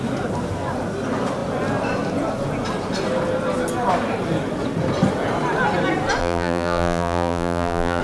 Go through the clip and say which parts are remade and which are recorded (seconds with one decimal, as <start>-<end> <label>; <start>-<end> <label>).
0.0-6.2 recorded; 6.2-8.0 remade